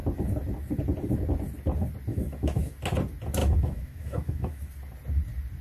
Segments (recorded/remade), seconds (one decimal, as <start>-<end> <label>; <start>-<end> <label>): 0.0-2.1 recorded; 2.1-2.7 remade; 2.7-3.4 recorded; 3.4-4.7 remade; 4.7-5.6 recorded